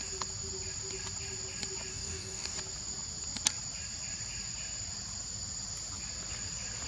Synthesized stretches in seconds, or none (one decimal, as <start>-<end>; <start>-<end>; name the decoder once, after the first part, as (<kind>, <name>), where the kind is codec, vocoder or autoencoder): 1.9-2.6 (codec, DAC)